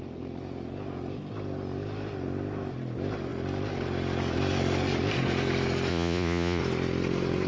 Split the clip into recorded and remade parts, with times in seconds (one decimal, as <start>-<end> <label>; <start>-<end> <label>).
0.0-5.9 recorded; 5.9-6.6 remade; 6.6-7.5 recorded